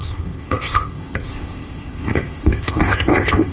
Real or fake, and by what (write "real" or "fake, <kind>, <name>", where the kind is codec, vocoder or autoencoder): fake, codec, ZipCodec